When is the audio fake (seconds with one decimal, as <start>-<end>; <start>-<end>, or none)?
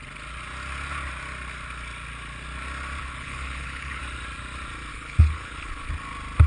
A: 3.0-4.0; 4.9-5.9